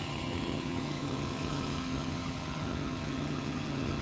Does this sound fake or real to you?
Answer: fake